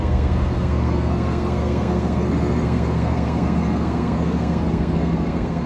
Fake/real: fake